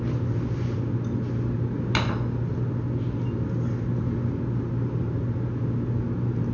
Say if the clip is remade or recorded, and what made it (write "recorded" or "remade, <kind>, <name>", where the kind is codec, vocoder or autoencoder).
recorded